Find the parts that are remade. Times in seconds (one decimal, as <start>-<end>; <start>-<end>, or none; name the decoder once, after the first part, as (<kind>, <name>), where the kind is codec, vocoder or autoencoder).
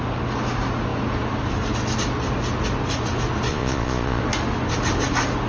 3.5-4.2 (vocoder, Vocos)